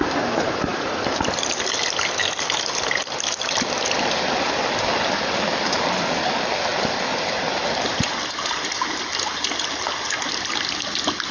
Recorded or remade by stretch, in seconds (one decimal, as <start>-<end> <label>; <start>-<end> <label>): 0.0-11.3 recorded